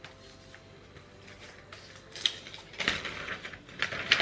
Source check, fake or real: real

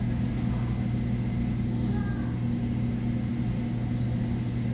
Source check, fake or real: real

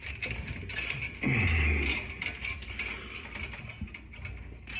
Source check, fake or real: real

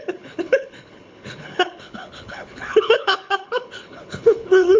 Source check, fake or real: fake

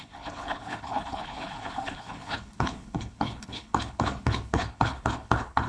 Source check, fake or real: fake